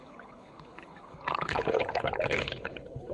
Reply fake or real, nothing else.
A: fake